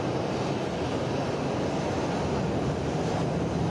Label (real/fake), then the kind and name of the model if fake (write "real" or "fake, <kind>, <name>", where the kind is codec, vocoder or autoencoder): real